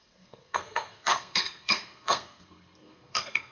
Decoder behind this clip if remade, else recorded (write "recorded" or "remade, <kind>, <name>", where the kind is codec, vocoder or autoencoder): remade, codec, SNAC